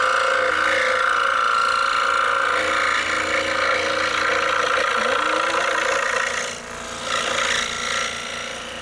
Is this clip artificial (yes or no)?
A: no